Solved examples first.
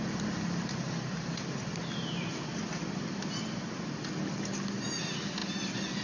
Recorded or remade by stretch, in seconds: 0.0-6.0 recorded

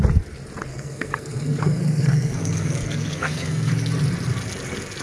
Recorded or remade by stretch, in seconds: 0.0-0.7 recorded; 0.7-3.7 remade; 3.7-5.0 recorded

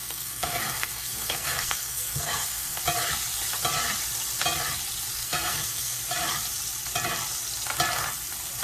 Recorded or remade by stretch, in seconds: 0.0-2.8 remade; 2.8-5.2 recorded; 5.2-6.0 remade; 6.0-8.6 recorded

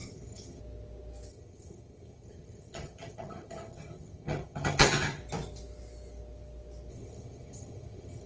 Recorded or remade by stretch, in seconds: 0.0-0.6 remade; 0.6-1.3 recorded; 1.3-5.2 remade; 5.2-6.9 recorded; 6.9-8.3 remade

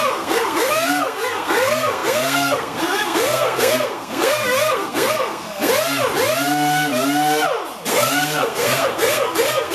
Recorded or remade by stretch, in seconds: 0.0-5.7 remade; 5.7-7.9 recorded; 7.9-9.7 remade

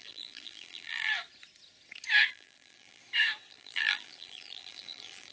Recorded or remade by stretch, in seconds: 0.0-1.1 remade; 1.1-2.3 recorded; 2.3-3.0 remade; 3.0-3.5 recorded; 3.5-5.3 remade

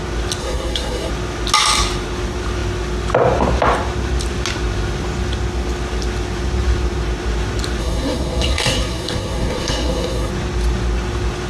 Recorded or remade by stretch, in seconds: 0.0-0.4 recorded; 0.4-1.1 remade; 1.1-7.8 recorded; 7.8-10.3 remade; 10.3-11.5 recorded